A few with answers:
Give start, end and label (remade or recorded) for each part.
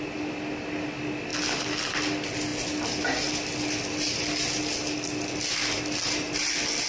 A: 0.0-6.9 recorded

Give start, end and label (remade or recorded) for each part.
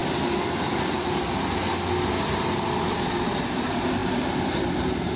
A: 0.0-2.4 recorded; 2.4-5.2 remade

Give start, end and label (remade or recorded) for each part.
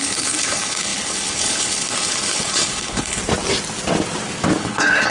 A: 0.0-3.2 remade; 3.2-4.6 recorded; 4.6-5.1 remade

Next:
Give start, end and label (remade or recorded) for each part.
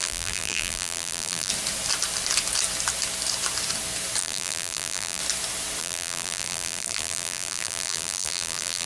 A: 0.0-1.5 remade; 1.5-4.2 recorded; 4.2-5.2 remade; 5.2-5.8 recorded; 5.8-8.9 remade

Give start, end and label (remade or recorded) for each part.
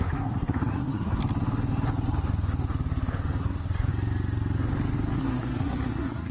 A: 0.0-1.2 remade; 1.2-3.4 recorded; 3.4-3.9 remade; 3.9-5.2 recorded; 5.2-6.3 remade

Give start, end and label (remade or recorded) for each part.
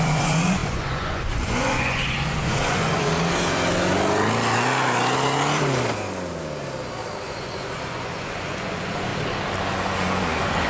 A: 0.0-3.1 remade; 3.1-7.2 recorded; 7.2-9.1 remade; 9.1-9.6 recorded; 9.6-10.7 remade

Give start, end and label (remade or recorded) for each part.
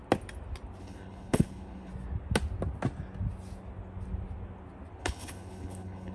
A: 0.0-0.8 recorded; 0.8-1.9 remade; 1.9-5.0 recorded; 5.0-6.1 remade